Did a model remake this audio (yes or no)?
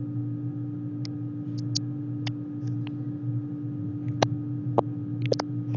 no